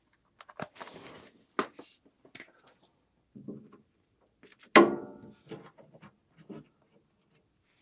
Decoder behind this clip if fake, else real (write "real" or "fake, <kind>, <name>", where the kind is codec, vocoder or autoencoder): real